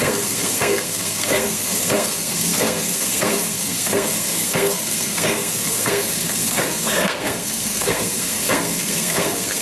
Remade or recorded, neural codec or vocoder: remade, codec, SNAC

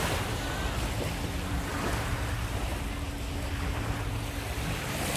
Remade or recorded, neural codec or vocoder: recorded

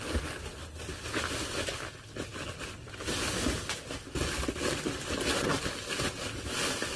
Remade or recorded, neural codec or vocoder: recorded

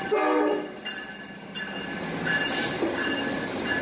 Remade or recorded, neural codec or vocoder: recorded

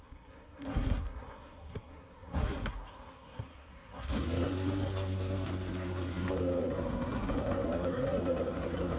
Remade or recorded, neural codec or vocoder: remade, codec, SNAC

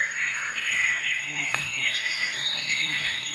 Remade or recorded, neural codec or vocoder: remade, codec, SNAC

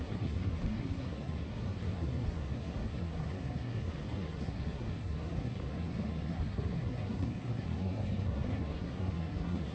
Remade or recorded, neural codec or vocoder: remade, codec, SNAC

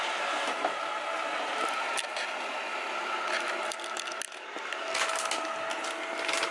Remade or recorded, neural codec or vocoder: recorded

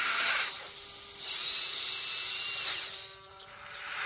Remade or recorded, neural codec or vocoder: recorded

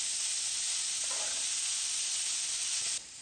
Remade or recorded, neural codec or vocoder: recorded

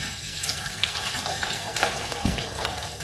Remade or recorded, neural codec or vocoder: remade, codec, SNAC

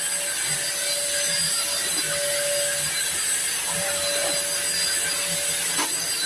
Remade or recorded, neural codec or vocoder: recorded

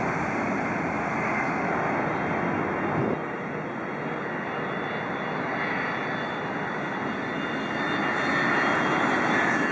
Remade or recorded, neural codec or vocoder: recorded